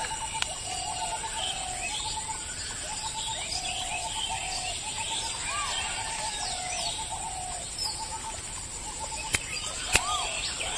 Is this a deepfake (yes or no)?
no